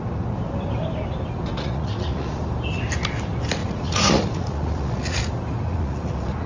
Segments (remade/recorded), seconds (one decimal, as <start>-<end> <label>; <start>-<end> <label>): 0.0-1.5 recorded; 1.5-2.4 remade; 2.4-3.6 recorded; 3.6-5.2 remade; 5.2-5.7 recorded; 5.7-6.5 remade